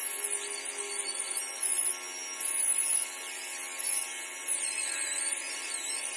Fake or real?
real